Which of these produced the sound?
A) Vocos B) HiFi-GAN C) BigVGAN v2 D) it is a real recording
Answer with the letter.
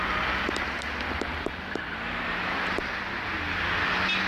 D